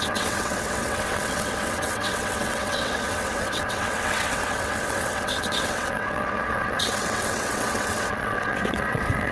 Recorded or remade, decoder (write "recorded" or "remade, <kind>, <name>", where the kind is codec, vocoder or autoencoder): remade, vocoder, WaveNeXt